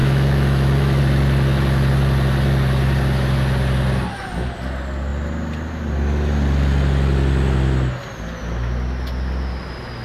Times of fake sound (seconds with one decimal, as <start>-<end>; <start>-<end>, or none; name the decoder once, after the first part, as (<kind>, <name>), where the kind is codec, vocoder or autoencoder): 0.0-1.0 (autoencoder, DAC-VAE)